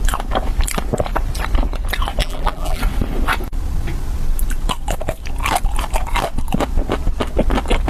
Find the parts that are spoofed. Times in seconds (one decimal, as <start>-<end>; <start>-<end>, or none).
2.2-2.8